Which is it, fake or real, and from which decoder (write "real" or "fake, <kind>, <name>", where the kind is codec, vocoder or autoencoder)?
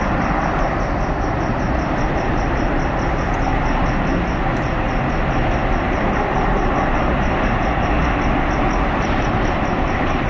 real